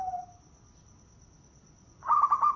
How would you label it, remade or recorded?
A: recorded